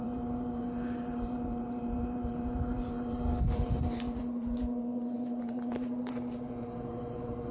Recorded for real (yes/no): no